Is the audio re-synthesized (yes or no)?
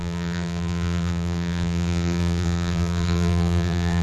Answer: yes